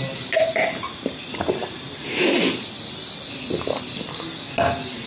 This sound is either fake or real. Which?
real